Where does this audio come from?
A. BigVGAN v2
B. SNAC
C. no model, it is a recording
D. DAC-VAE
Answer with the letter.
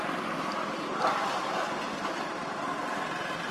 C